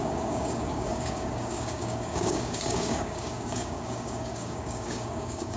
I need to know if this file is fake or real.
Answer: fake